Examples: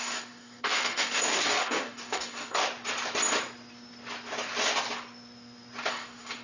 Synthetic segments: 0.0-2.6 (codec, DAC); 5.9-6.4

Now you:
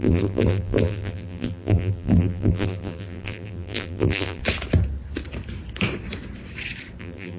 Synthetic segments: 0.0-4.4 (vocoder, BigVGAN v2); 7.0-7.4